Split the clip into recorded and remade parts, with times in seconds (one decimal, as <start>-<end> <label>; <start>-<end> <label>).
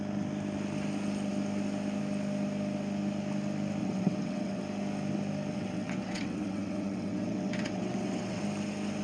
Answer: 0.0-3.8 recorded; 3.8-4.6 remade; 4.6-5.5 recorded; 5.5-8.4 remade; 8.4-9.0 recorded